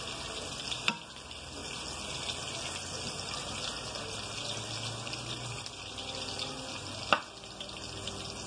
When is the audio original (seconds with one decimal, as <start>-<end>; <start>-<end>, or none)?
0.0-8.5